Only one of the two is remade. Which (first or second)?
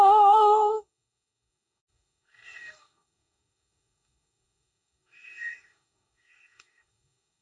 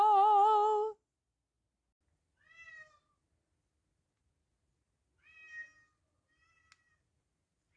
first